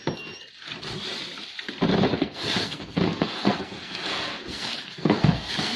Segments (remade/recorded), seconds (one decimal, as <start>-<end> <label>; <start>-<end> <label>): 0.0-2.1 recorded; 2.1-5.8 remade